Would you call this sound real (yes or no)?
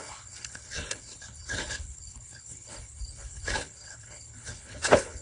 no